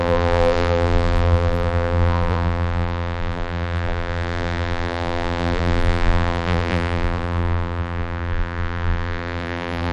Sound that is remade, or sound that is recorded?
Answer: remade